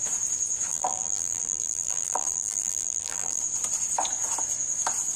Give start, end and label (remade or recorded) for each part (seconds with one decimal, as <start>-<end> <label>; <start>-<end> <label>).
0.0-0.7 recorded; 0.7-3.4 remade; 3.4-5.2 recorded